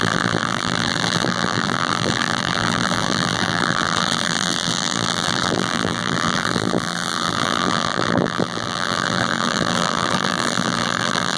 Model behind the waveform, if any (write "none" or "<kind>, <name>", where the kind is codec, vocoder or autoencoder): vocoder, BigVGAN v2